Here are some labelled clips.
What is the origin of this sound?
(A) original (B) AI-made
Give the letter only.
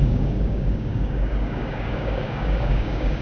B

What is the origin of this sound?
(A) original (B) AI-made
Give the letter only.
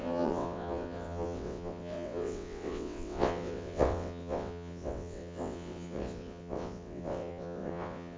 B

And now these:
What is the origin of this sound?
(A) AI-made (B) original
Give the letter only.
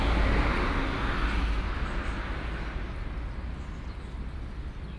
B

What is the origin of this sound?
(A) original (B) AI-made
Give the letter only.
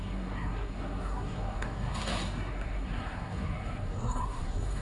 B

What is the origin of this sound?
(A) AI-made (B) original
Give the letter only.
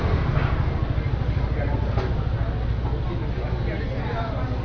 B